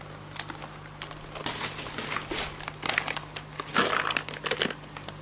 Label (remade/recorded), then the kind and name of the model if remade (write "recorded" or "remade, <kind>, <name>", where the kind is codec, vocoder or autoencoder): recorded